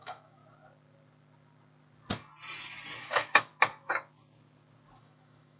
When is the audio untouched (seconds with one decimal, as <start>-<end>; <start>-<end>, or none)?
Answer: 0.4-3.0; 3.5-5.0